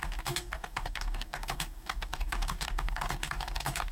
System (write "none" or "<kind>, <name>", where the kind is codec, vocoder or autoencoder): codec, DAC